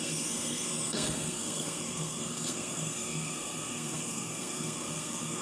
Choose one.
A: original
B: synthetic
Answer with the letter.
B